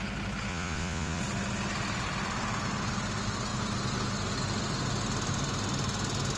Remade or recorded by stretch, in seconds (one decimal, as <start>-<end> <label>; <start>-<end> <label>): 0.0-0.5 recorded; 0.5-1.2 remade; 1.2-6.4 recorded